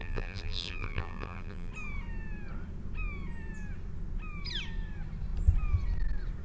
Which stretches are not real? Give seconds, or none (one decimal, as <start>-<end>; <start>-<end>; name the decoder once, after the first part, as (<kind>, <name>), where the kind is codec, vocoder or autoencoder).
0.0-1.7 (vocoder, BigVGAN v2)